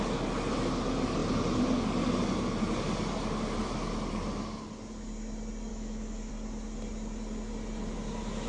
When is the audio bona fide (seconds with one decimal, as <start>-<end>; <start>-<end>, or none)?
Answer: 0.0-5.7; 6.3-8.5